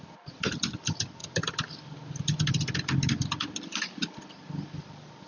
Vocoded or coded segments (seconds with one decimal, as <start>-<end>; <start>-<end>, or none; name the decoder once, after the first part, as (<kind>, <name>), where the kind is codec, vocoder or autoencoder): none